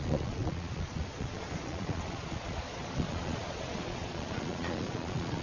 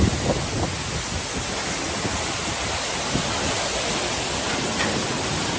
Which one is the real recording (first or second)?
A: second